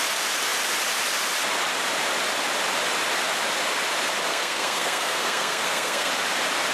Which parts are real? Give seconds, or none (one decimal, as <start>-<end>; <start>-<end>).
0.0-4.3; 6.1-6.7